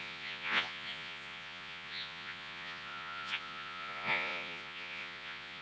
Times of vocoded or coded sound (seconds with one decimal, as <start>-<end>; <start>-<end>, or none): 0.0-5.6